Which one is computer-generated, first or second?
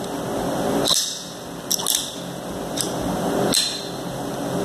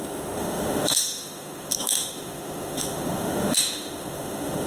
second